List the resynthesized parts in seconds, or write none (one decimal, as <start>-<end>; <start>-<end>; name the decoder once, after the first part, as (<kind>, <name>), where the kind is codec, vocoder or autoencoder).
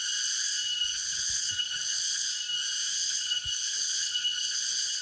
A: 0.9-2.3 (codec, HILCodec); 2.9-5.0